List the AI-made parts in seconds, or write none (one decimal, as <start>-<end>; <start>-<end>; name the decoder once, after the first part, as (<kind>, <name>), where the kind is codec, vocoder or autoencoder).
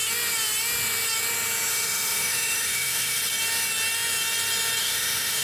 1.7-3.2 (autoencoder, DAC-VAE); 4.8-5.4